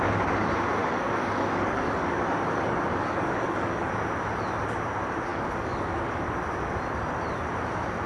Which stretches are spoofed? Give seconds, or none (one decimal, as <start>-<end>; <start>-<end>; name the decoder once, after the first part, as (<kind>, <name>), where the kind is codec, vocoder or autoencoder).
0.8-3.9 (codec, DAC); 5.3-6.3